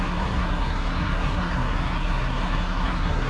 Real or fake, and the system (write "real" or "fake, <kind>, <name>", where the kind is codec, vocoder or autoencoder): fake, codec, SNAC